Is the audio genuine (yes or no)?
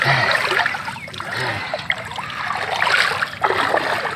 yes